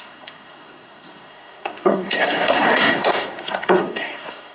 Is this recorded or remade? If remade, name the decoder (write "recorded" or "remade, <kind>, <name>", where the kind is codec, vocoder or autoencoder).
remade, codec, SNAC